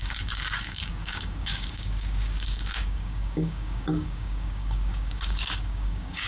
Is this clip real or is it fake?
fake